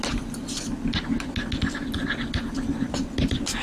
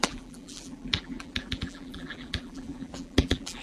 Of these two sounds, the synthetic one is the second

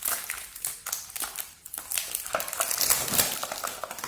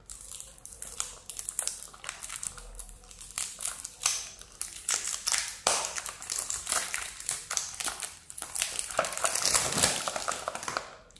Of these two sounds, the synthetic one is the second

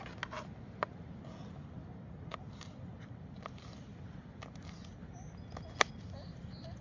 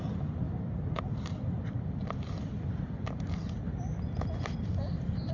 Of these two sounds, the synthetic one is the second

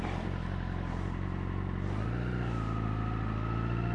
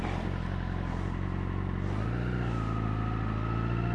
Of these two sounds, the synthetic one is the first